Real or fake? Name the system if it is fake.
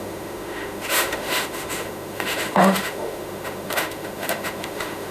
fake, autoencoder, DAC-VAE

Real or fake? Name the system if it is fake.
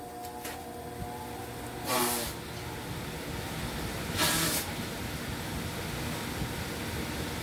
real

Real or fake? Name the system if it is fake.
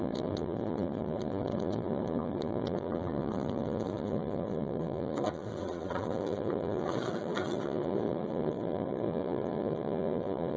fake, vocoder, Vocos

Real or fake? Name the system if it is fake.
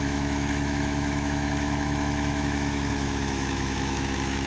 fake, autoencoder, DAC-VAE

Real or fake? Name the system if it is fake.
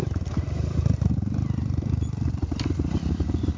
real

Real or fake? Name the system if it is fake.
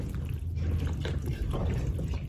real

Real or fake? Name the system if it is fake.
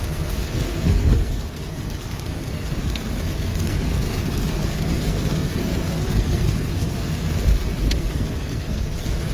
fake, codec, SNAC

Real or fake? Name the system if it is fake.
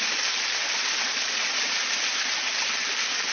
real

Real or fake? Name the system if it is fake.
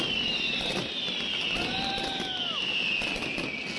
real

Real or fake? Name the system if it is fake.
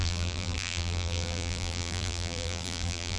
fake, vocoder, BigVGAN v2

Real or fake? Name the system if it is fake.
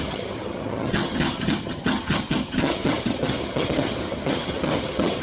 fake, vocoder, HiFi-GAN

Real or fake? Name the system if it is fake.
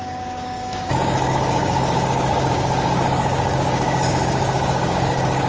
fake, codec, DAC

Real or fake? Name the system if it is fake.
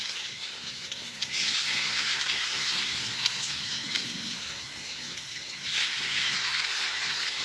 fake, codec, SNAC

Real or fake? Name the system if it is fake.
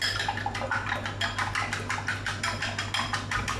real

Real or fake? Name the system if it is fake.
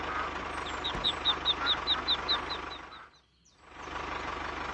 real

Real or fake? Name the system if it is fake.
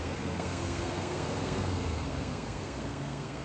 fake, codec, SNAC